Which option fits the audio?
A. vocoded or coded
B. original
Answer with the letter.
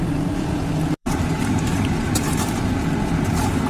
A